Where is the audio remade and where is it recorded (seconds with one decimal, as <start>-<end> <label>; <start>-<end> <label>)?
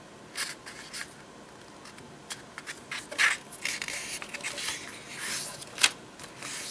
0.0-6.7 recorded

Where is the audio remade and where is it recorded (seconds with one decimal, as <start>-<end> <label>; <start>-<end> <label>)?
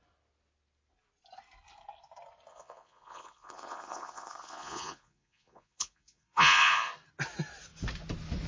0.0-2.5 recorded; 2.5-6.9 remade; 6.9-8.5 recorded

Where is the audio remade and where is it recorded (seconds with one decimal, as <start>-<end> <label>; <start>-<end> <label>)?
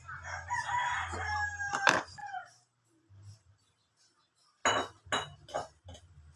0.0-4.6 remade; 4.6-6.4 recorded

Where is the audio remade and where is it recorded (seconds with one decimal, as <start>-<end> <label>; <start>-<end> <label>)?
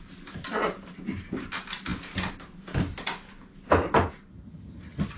0.0-4.3 recorded; 4.3-5.2 remade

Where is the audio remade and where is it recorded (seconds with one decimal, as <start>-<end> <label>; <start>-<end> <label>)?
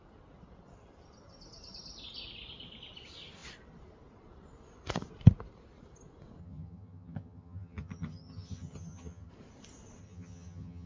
0.0-6.4 recorded; 6.4-9.3 remade; 9.3-10.0 recorded; 10.0-10.9 remade